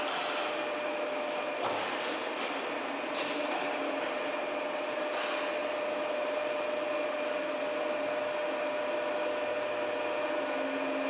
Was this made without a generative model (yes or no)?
yes